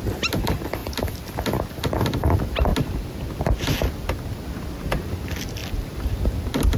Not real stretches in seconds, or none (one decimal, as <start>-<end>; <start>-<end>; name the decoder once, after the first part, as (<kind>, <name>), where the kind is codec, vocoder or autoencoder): none